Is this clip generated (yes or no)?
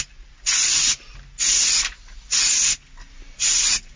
no